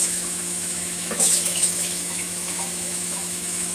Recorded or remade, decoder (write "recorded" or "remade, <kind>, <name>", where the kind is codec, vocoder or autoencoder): remade, autoencoder, DAC-VAE